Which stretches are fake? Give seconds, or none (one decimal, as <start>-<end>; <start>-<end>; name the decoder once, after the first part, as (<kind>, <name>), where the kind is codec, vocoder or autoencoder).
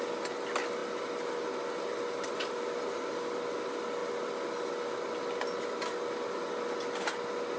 none